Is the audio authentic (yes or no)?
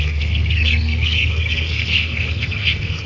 no